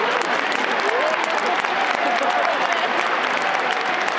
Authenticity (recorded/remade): recorded